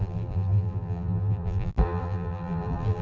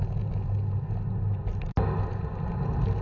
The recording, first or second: second